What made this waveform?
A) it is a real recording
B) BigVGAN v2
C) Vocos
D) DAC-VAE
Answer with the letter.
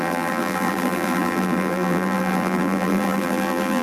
B